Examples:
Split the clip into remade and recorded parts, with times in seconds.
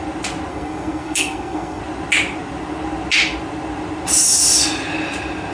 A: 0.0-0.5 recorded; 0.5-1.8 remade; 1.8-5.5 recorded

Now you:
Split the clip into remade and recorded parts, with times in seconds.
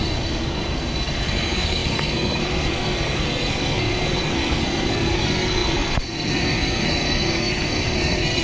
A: 0.0-8.4 remade